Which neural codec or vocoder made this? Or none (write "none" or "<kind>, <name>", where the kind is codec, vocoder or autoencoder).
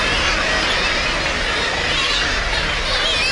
none